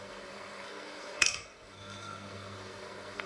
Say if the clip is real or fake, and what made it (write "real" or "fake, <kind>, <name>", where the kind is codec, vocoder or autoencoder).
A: fake, codec, SNAC